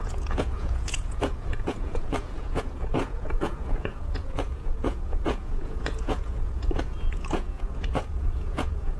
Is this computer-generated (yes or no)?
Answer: yes